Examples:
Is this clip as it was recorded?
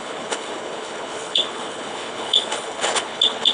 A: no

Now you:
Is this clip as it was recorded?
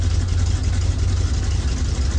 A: yes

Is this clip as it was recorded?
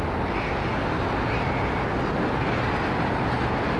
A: yes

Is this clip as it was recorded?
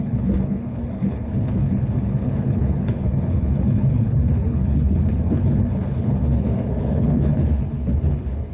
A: no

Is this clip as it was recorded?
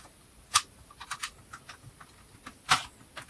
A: yes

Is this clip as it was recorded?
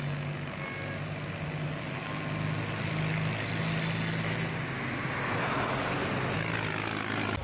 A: yes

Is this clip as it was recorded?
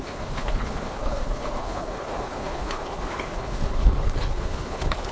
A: no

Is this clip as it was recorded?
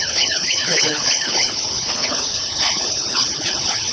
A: no